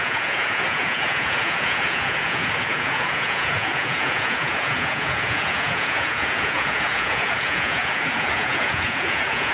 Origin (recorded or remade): remade